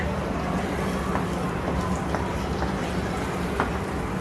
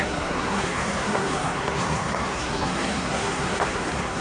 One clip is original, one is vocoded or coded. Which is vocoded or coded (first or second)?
second